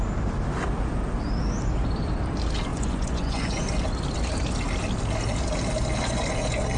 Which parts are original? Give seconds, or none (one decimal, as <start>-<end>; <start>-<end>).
0.0-2.7; 3.6-6.8